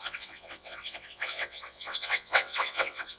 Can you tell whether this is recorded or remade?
remade